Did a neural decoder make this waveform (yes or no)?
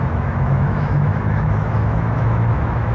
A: yes